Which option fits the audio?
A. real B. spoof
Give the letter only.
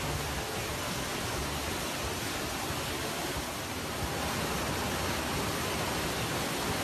A